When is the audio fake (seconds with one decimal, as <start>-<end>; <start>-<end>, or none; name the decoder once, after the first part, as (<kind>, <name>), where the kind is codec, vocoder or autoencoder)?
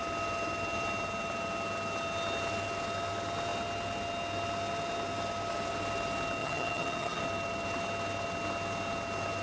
6.4-7.2 (vocoder, HiFi-GAN)